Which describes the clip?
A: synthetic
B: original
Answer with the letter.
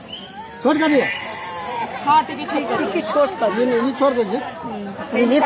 B